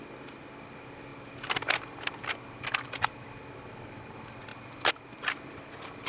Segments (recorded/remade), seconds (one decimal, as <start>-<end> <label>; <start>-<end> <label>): 0.0-6.1 recorded